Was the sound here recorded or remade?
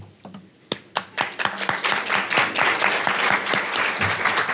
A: recorded